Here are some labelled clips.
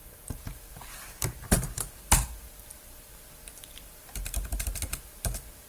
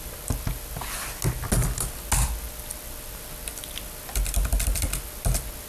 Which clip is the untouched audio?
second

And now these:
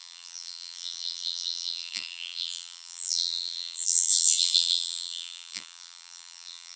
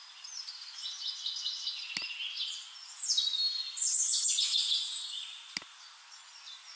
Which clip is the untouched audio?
second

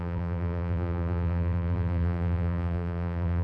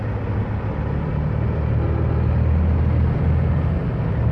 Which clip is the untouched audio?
second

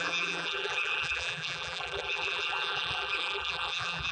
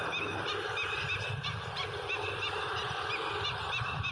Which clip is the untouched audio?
second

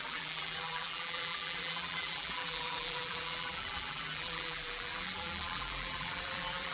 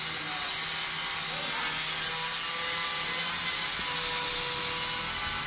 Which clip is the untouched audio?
second